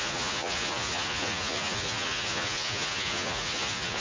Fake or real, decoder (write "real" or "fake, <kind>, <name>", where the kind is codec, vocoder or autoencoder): fake, vocoder, Vocos